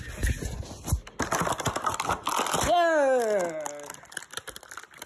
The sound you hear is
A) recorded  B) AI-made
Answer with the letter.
A